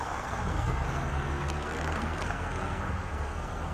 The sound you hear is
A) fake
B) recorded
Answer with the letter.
A